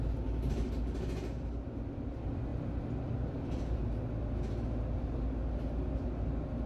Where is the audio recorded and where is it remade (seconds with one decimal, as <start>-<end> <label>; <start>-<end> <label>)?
0.0-6.7 recorded